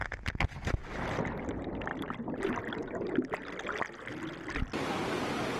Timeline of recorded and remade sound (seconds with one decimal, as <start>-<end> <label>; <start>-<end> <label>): 0.0-5.6 recorded